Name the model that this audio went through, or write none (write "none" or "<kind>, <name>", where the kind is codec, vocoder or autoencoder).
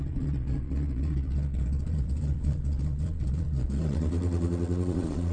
vocoder, Vocos